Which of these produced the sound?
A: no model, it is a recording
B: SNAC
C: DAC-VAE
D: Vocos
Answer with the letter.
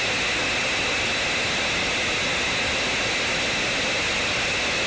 A